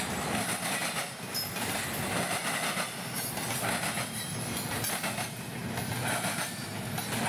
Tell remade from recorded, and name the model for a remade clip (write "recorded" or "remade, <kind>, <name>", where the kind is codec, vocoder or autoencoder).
recorded